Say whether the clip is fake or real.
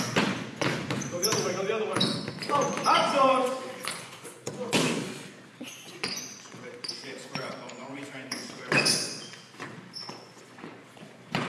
fake